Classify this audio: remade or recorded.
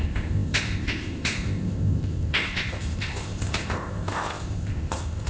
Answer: remade